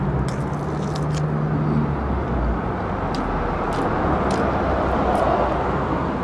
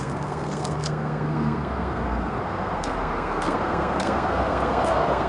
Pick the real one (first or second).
first